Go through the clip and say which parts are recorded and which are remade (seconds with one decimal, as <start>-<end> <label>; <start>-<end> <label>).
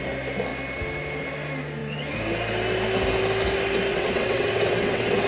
0.0-3.9 recorded; 3.9-5.3 remade